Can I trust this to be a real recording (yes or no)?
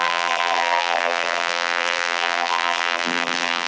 no